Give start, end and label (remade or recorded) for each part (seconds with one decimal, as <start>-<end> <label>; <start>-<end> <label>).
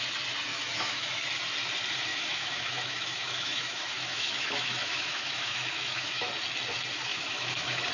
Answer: 0.0-0.5 recorded; 0.5-1.2 remade; 1.2-2.1 recorded; 2.1-6.3 remade; 6.3-7.1 recorded; 7.1-7.9 remade